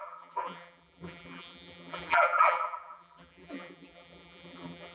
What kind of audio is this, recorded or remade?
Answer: remade